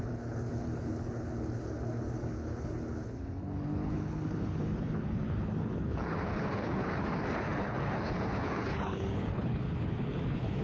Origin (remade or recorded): remade